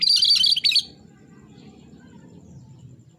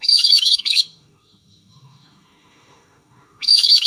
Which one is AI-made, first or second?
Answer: second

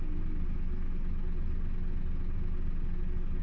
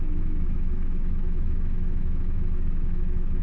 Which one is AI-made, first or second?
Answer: second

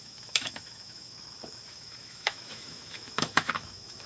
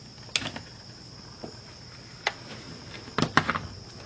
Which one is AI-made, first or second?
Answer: first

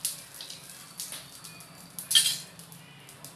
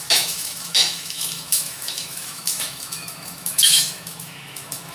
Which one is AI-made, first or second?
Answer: second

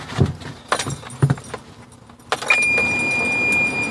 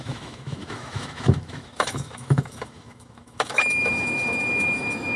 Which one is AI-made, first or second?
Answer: second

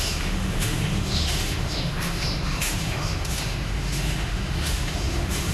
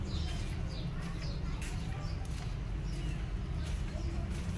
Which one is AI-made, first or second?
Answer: first